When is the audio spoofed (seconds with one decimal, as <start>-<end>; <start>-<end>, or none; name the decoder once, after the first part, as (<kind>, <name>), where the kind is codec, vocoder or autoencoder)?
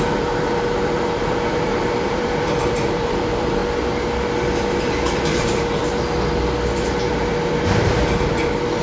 0.0-3.6 (vocoder, BigVGAN v2); 4.8-5.8; 6.8-8.8